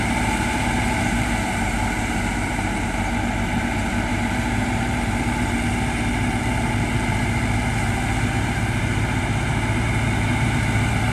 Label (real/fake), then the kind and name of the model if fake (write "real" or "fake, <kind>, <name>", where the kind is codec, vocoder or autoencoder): fake, vocoder, BigVGAN v2